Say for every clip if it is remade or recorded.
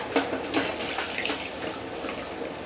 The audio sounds recorded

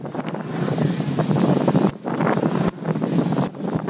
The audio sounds recorded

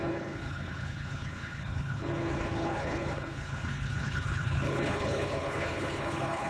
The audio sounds remade